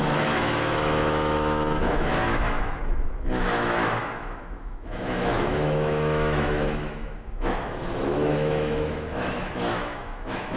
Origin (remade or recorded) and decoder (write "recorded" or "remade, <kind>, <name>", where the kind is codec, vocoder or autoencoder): remade, autoencoder, DAC-VAE